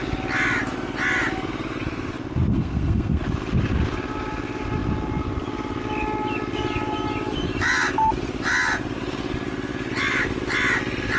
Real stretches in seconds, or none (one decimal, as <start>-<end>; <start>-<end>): 0.0-2.5; 3.2-11.2

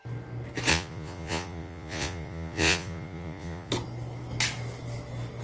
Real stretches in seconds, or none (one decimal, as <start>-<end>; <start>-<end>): 0.0-0.7; 3.7-5.4

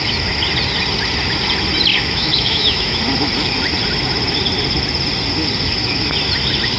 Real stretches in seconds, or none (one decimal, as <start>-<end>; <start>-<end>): 0.0-1.9; 3.0-6.8